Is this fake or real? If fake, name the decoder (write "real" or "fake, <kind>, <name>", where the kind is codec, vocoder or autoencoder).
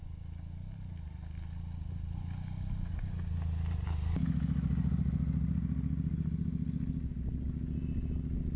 real